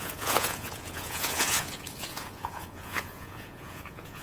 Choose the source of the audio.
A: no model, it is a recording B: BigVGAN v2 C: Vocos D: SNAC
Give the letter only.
C